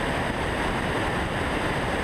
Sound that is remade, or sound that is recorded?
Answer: recorded